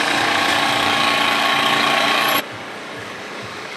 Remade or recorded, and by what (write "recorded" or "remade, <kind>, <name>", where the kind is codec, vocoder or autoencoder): remade, codec, DAC